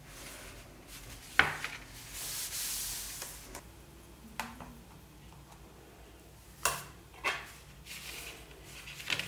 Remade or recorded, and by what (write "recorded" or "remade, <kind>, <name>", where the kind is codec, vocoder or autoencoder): recorded